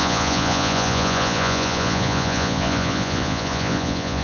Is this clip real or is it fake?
fake